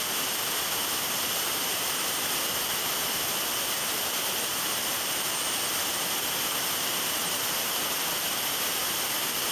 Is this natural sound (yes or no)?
yes